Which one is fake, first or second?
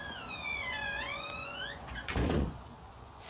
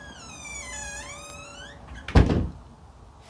first